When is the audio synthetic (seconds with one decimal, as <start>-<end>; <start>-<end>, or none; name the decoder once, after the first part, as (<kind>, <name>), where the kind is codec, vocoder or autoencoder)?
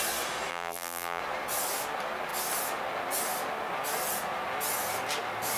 0.5-1.2 (vocoder, BigVGAN v2)